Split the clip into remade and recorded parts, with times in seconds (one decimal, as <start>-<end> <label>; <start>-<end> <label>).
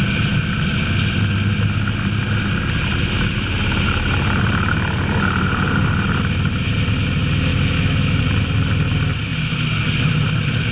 0.0-7.5 recorded; 7.5-8.2 remade; 8.2-10.7 recorded